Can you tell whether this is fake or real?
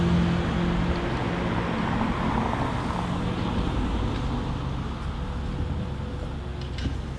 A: real